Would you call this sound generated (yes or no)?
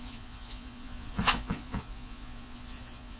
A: yes